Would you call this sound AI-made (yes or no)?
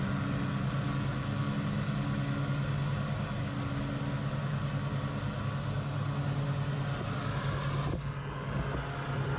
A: no